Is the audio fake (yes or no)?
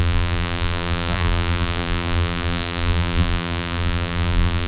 yes